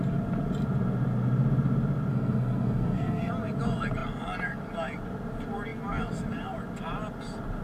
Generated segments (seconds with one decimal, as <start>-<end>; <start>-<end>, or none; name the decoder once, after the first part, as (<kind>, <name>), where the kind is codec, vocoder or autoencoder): 2.1-3.3 (codec, SNAC)

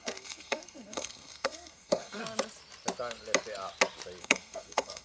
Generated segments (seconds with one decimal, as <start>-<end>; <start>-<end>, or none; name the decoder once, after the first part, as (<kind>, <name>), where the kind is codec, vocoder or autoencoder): 0.0-2.2 (codec, SNAC); 4.2-5.0

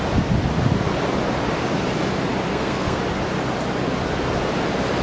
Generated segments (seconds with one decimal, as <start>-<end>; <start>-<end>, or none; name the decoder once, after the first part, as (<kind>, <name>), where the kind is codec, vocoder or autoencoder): 2.5-3.0 (codec, SNAC)

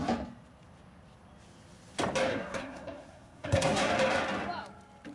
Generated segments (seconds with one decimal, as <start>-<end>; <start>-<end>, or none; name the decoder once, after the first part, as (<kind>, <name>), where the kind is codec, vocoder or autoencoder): 2.3-3.9 (codec, SNAC)

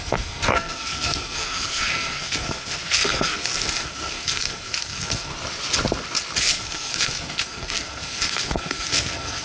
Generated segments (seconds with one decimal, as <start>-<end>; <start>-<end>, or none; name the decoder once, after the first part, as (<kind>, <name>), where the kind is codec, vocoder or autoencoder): 0.0-5.3 (codec, SNAC); 6.4-9.4

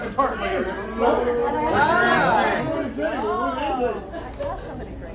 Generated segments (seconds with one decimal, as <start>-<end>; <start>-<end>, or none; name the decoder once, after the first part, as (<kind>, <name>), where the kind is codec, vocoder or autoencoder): none